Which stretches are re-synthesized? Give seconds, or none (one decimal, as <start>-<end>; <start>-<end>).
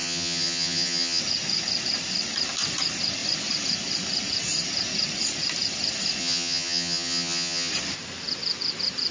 0.0-1.2; 6.2-7.7